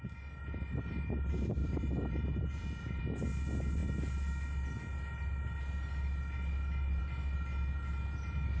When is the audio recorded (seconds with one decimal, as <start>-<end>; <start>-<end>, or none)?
0.0-1.6; 3.0-8.6